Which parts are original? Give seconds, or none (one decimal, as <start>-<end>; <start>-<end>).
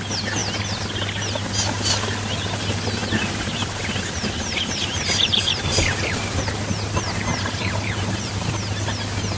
0.0-3.0; 5.5-7.3; 8.5-9.4